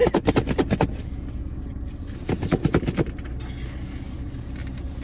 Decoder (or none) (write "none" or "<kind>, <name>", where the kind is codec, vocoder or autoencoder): none